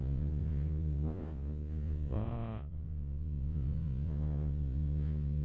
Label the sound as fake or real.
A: fake